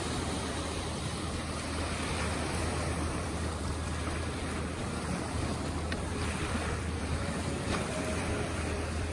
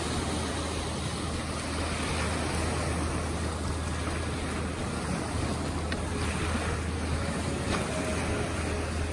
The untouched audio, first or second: second